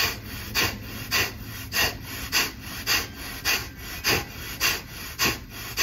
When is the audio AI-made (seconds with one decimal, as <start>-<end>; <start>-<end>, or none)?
none